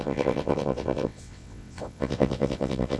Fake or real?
fake